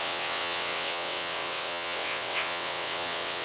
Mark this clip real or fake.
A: fake